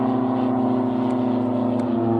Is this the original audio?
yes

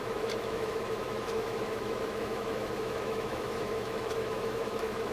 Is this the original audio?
no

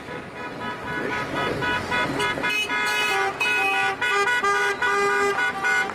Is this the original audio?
yes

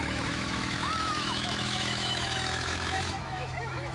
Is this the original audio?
no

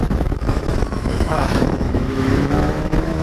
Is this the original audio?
no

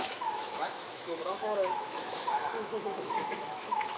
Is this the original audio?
no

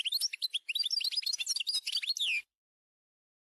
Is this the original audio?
yes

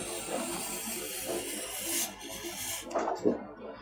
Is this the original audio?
yes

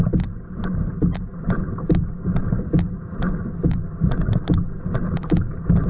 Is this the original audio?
yes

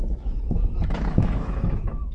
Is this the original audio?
no